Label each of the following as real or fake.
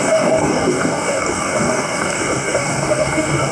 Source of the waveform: fake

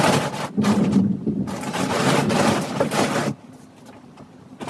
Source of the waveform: real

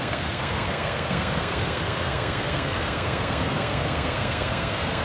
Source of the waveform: fake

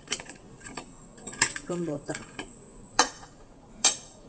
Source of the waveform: fake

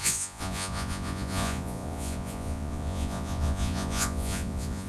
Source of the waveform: fake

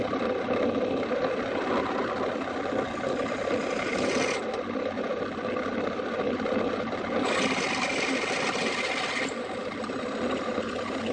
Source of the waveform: real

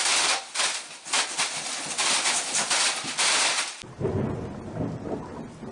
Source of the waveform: real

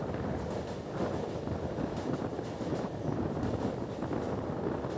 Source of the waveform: real